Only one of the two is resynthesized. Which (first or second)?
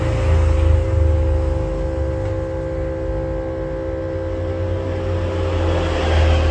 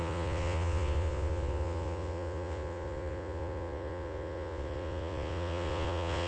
second